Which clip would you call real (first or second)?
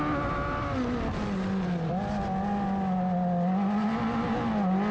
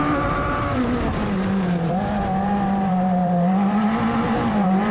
first